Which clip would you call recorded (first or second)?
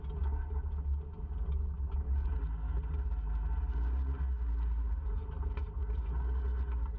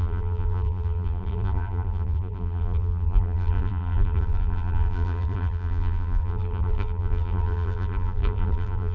first